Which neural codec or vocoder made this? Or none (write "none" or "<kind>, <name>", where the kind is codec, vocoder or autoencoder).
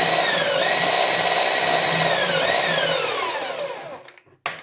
none